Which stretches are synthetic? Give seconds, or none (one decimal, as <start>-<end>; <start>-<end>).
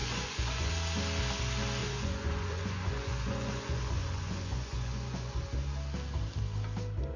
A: 0.0-0.7; 1.8-5.4